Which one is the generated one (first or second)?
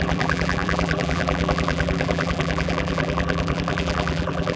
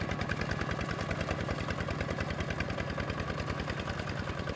first